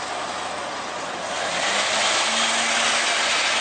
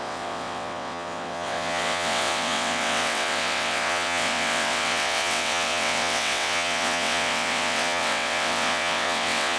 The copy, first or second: second